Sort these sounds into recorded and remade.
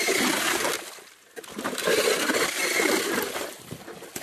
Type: recorded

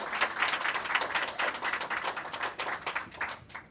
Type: recorded